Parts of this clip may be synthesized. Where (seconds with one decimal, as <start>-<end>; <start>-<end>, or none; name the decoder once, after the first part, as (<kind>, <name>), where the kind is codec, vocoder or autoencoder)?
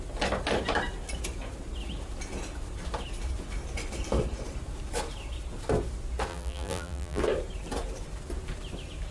6.3-7.2 (vocoder, BigVGAN v2)